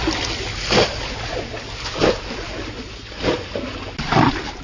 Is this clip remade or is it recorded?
recorded